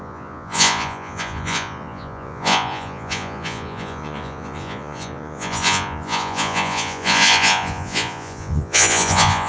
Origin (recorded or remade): remade